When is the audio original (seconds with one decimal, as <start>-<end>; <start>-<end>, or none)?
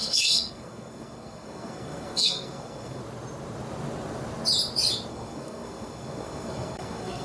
3.0-5.1